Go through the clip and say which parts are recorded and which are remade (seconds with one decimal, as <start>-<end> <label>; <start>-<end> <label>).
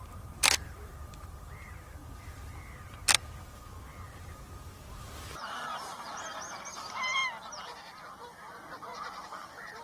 0.0-2.0 remade; 2.0-4.1 recorded; 4.1-7.2 remade; 7.2-8.2 recorded; 8.2-9.8 remade